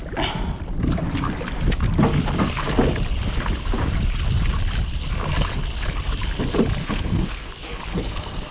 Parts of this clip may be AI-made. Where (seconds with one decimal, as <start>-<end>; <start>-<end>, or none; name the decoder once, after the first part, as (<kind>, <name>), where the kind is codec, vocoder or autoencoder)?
6.8-7.5 (codec, SNAC); 7.9-8.5